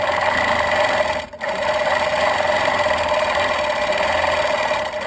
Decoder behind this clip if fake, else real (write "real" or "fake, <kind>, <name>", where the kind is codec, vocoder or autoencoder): real